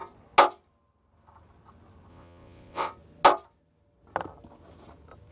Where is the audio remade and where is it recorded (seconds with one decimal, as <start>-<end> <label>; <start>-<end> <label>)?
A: 0.0-2.1 recorded; 2.1-2.9 remade; 2.9-5.3 recorded